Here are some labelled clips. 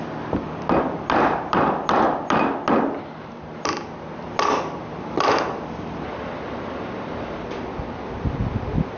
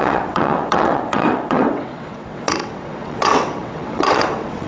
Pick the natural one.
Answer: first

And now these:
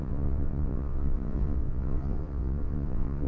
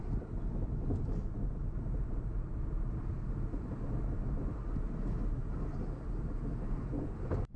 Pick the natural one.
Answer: second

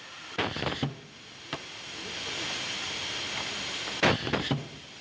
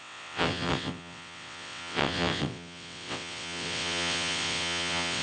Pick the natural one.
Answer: first